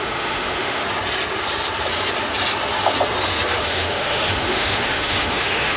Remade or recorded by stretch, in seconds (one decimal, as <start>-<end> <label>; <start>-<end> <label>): 0.0-0.8 remade; 0.8-3.6 recorded; 3.6-5.8 remade